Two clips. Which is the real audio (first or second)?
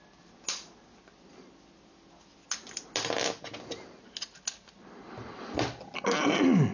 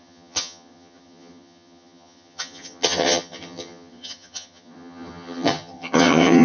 first